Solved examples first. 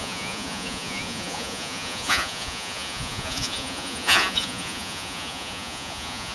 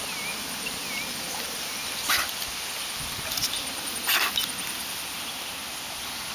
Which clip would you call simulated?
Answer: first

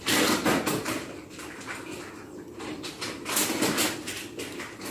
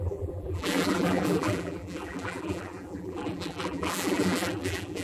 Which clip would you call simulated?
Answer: second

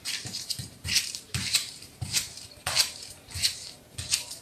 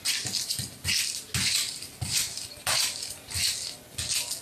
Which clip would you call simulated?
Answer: first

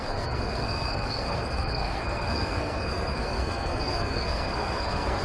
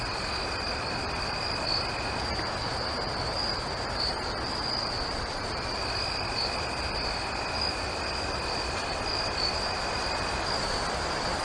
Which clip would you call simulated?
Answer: first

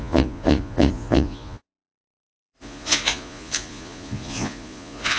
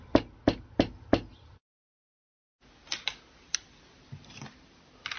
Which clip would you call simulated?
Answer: first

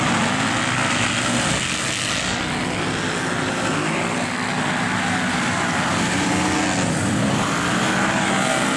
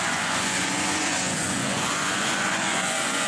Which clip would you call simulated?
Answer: second